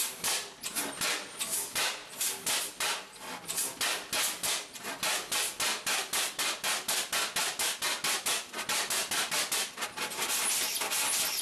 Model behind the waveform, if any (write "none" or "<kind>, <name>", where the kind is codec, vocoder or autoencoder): vocoder, BigVGAN v2